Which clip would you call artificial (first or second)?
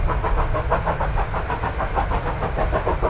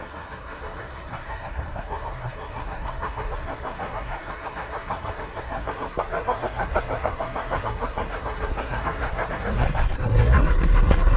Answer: second